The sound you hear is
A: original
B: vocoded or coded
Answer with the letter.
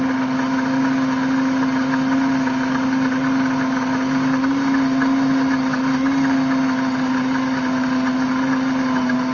A